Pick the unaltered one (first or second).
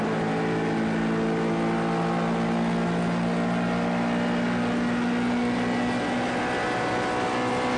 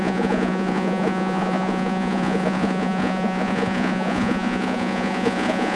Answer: first